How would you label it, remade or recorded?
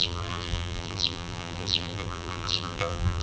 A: remade